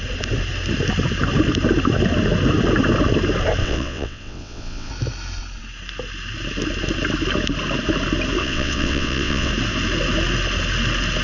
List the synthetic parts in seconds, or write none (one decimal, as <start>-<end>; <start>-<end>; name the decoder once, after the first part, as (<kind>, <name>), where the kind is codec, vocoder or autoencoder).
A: 3.6-4.9 (vocoder, WaveNeXt); 8.4-9.5